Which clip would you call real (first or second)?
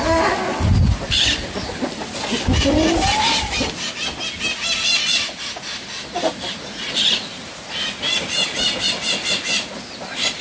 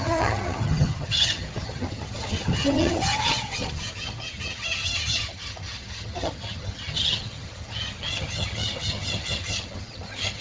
first